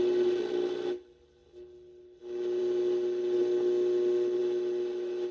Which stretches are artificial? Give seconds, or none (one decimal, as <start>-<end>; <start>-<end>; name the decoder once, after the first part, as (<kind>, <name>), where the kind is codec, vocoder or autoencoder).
none